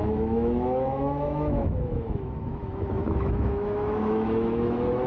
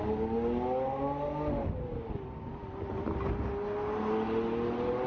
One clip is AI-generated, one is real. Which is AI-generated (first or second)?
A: first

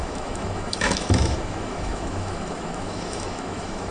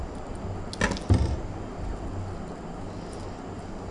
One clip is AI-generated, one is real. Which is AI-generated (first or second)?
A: first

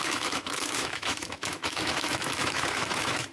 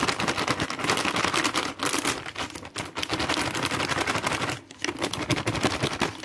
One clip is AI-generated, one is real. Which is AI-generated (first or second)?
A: first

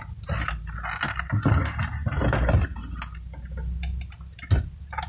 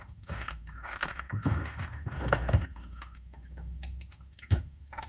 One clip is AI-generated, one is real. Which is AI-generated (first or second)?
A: second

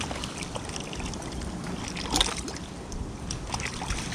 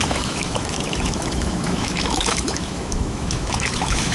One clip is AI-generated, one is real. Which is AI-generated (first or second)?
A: second